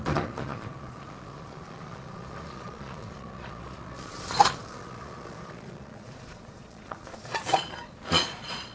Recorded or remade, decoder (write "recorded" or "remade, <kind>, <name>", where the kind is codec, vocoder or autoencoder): remade, vocoder, Vocos